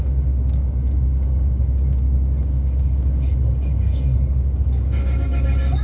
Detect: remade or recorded remade